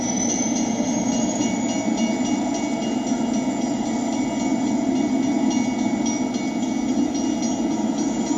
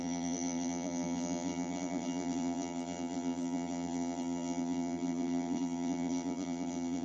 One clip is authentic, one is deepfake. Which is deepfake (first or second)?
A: second